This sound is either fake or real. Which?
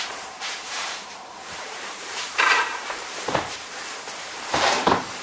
fake